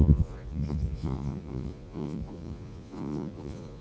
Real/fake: fake